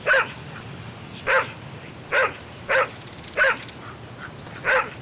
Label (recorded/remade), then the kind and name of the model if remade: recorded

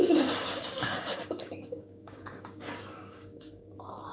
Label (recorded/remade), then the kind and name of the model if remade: remade, codec, DAC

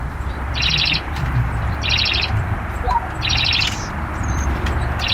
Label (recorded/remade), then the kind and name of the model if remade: remade, vocoder, BigVGAN v2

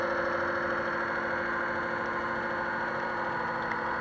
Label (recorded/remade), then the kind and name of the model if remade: recorded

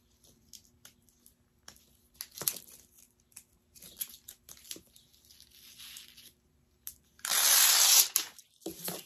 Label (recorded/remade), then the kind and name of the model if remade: recorded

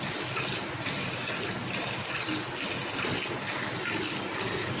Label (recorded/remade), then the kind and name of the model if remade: recorded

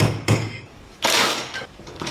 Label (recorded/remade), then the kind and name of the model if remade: remade, codec, DAC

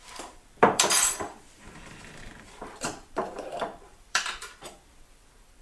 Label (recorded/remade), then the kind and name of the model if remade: remade, vocoder, BigVGAN v2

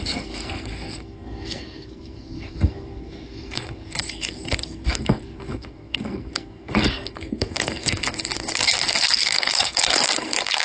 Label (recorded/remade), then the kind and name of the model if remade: remade, codec, SNAC